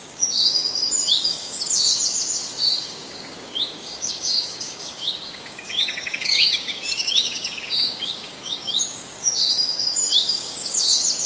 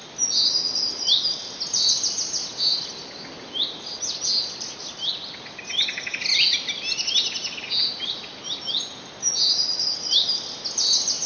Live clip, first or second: second